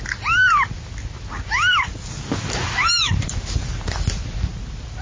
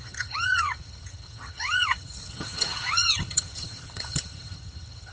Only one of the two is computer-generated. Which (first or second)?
second